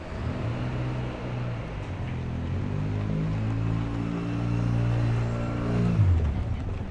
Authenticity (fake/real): real